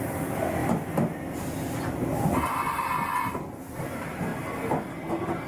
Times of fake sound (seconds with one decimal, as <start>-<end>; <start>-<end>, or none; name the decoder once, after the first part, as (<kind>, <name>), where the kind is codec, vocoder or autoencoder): none